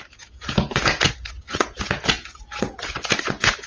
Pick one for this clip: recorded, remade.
remade